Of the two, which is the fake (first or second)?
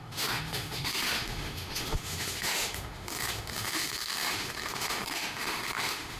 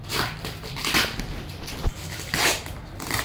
first